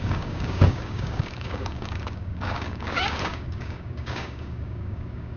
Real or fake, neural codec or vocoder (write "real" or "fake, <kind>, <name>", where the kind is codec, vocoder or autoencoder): fake, codec, DAC